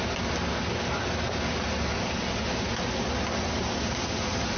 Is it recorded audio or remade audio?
recorded